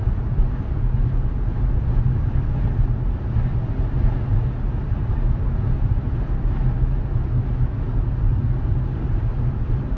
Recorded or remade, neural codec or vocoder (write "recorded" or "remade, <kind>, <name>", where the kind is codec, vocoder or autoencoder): recorded